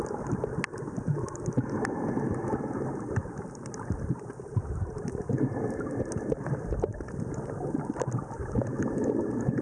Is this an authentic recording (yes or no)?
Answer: yes